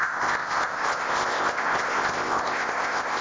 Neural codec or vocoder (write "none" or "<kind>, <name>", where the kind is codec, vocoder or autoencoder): codec, ZipCodec